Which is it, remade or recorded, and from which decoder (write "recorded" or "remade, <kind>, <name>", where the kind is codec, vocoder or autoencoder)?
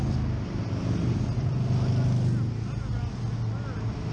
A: recorded